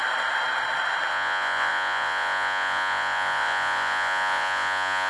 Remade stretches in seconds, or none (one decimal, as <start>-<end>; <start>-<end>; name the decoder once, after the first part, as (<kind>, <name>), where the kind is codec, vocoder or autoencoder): 1.1-5.1 (vocoder, Vocos)